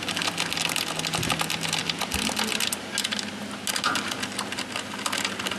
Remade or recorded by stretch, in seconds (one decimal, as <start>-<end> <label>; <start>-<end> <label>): 0.0-5.6 recorded